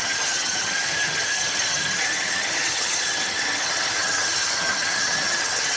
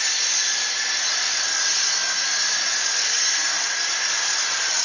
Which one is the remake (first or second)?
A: first